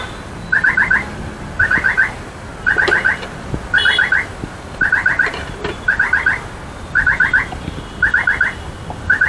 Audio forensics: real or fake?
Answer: fake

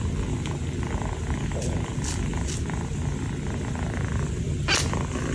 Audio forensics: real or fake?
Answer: real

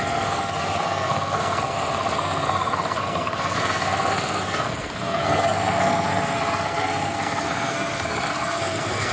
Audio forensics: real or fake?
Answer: fake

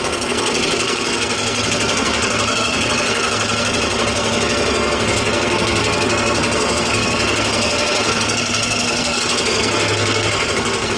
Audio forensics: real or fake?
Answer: fake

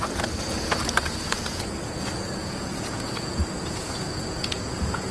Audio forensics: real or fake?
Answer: fake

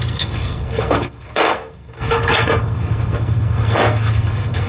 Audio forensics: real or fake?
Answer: fake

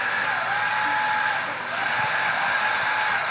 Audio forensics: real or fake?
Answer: real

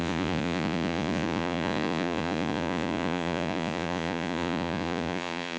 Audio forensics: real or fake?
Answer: fake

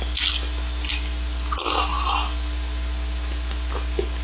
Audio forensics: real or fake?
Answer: real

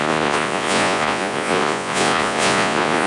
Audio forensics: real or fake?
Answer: fake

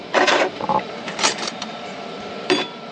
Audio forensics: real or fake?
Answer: fake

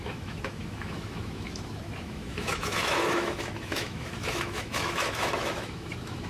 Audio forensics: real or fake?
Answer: fake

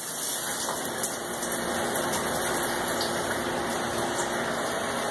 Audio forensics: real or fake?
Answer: real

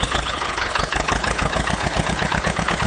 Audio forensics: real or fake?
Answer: fake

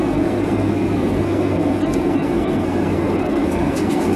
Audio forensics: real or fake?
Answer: fake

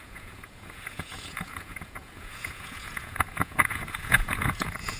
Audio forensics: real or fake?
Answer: fake